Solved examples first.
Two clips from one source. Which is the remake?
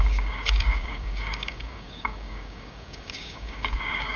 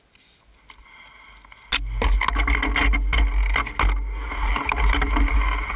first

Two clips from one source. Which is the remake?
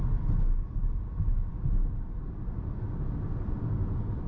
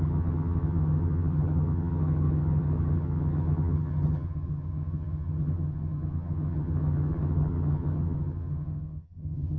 second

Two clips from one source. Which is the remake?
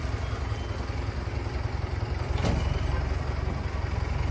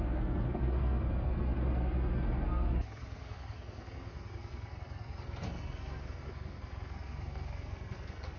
second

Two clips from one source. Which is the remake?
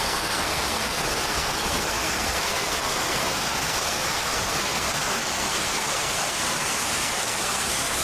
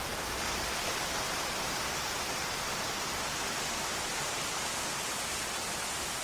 first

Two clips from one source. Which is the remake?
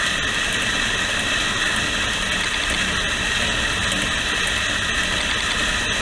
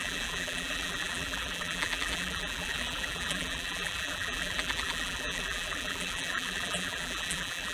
second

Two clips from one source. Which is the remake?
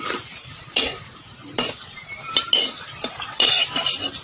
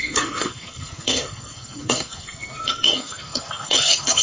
second